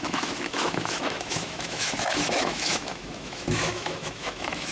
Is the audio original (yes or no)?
no